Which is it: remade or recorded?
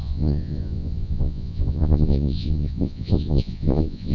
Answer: remade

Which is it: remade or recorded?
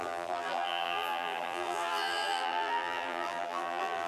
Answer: remade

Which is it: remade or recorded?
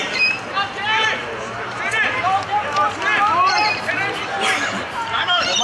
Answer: remade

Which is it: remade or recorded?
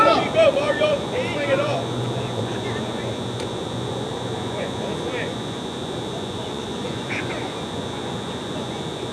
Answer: remade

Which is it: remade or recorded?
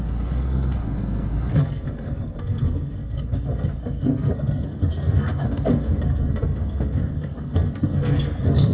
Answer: remade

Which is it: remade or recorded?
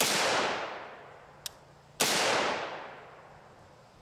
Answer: recorded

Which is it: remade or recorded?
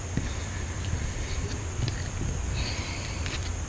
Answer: remade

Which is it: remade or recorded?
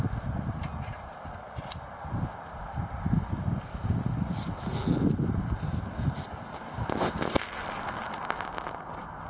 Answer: recorded